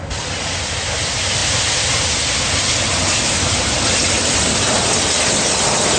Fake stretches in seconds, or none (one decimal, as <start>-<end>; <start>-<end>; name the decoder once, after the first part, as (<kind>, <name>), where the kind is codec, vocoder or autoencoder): none